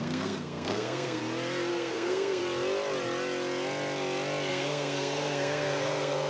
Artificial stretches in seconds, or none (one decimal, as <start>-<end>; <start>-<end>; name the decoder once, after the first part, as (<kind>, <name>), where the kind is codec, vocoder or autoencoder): 0.0-1.2 (codec, SNAC); 1.7-2.4; 4.5-6.3